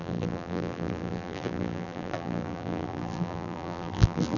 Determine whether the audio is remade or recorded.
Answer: remade